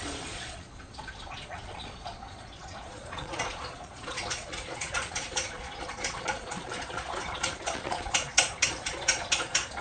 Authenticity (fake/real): fake